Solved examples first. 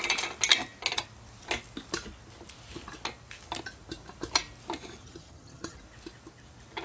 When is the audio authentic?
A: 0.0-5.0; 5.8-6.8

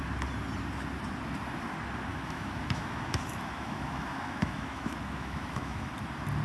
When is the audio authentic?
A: 0.0-2.1; 5.9-6.4

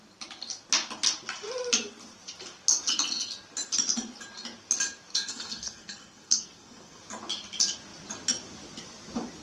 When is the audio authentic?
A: 0.0-5.1; 7.0-9.4

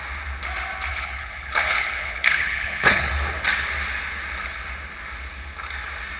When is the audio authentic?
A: 0.0-0.9; 3.1-6.2

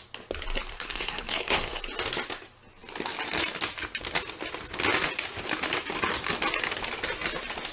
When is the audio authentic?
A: 0.0-0.7; 1.8-7.7

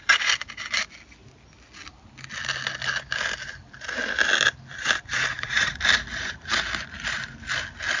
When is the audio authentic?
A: 0.0-5.3; 5.8-8.0